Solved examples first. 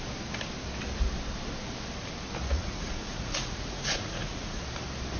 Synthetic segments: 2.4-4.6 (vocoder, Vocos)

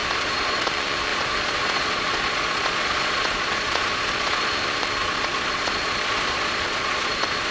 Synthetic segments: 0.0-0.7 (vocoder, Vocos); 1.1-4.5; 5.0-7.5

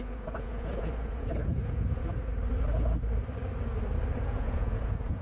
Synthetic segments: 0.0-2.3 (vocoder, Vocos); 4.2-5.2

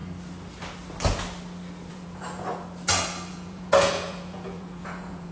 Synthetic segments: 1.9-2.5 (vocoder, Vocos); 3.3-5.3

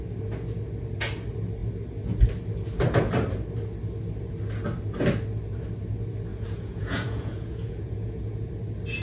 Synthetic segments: 6.3-8.5 (vocoder, Vocos)

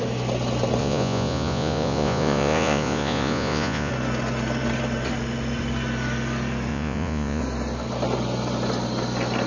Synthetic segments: 0.8-3.9 (vocoder, Vocos); 6.7-7.4